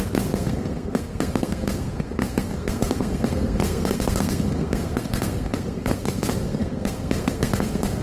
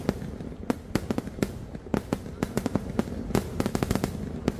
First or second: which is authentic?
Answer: second